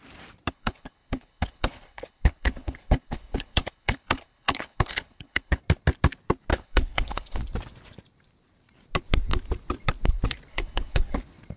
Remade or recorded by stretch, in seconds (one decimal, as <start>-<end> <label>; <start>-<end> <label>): 0.0-0.5 recorded; 0.5-5.6 remade; 5.6-6.5 recorded; 6.5-7.4 remade; 7.4-10.5 recorded; 10.5-11.2 remade; 11.2-11.6 recorded